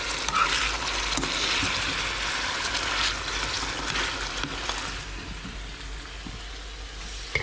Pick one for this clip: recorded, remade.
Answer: recorded